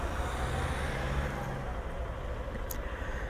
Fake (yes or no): no